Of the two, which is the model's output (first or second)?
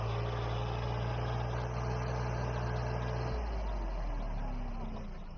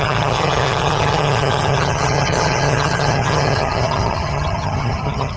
second